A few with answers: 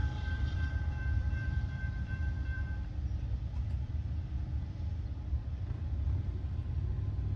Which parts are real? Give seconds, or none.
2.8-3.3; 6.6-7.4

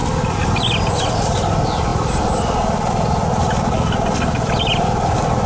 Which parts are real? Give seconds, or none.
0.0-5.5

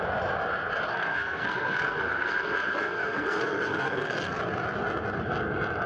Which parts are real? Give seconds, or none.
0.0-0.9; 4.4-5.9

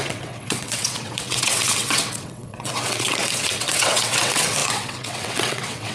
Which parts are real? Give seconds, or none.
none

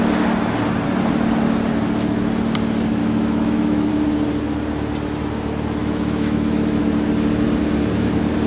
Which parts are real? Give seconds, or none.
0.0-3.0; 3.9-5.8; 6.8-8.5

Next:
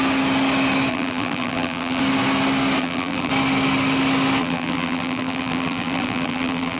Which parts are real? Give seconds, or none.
0.0-0.9; 2.0-2.8; 3.3-4.4

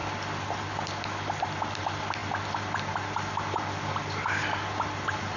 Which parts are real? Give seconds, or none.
0.0-5.4

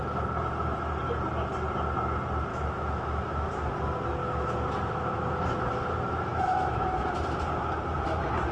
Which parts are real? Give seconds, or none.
0.0-2.5; 3.7-4.2; 5.6-6.3; 7.1-8.5